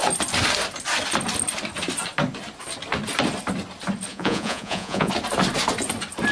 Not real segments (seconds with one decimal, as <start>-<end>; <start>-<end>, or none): 4.1-5.1